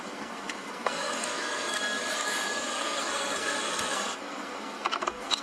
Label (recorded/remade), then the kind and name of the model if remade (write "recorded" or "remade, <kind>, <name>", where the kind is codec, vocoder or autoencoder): remade, codec, SNAC